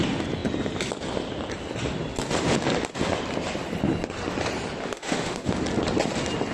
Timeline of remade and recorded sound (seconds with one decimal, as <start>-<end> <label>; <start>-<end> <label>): 0.0-4.8 recorded; 4.8-5.5 remade; 5.5-6.5 recorded